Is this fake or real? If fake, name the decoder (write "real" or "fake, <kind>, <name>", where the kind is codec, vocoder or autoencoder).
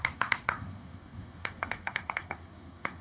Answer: fake, codec, SNAC